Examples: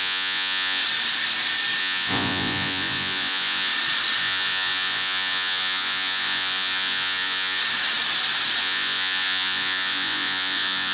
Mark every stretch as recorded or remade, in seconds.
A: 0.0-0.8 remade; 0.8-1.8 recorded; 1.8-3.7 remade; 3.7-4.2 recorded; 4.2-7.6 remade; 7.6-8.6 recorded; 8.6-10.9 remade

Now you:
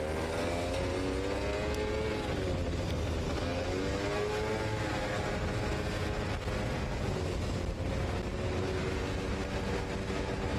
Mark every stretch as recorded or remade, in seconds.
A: 0.0-4.9 recorded; 4.9-5.7 remade; 5.7-10.6 recorded

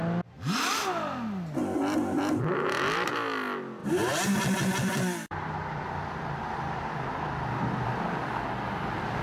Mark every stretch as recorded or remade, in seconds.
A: 0.0-3.8 recorded; 3.8-7.9 remade; 7.9-9.2 recorded